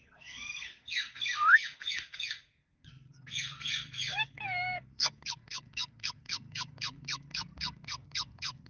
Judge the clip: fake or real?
fake